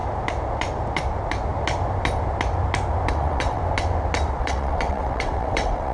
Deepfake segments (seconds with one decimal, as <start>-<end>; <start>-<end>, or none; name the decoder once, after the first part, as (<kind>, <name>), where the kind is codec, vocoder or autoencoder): 3.1-3.6 (vocoder, WaveNeXt); 4.4-5.9